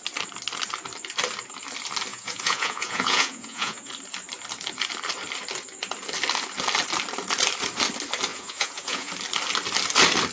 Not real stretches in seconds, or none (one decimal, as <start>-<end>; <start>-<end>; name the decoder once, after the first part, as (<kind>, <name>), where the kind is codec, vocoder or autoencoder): 2.1-3.9 (vocoder, Vocos); 8.3-9.1

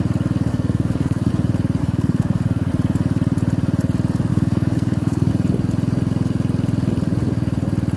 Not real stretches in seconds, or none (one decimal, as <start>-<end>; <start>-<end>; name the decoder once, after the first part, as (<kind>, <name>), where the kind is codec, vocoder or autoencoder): 0.5-1.3 (codec, SNAC); 1.8-2.7; 4.3-5.3

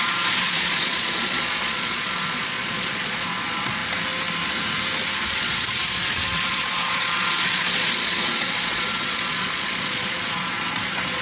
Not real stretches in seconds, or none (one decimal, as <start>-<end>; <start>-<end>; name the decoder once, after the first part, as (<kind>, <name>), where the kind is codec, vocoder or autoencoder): 0.0-3.8 (vocoder, Vocos); 5.3-11.2

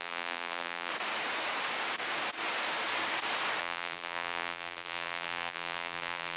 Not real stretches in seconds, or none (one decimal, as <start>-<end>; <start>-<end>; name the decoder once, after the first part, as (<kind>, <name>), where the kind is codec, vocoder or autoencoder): 0.0-0.9 (vocoder, BigVGAN v2); 3.6-6.4

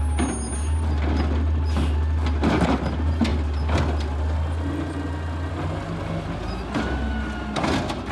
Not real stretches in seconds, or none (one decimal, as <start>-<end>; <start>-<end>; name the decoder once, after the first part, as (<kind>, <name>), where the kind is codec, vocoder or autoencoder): none